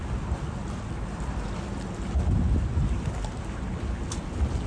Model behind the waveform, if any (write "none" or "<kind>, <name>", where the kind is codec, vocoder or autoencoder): none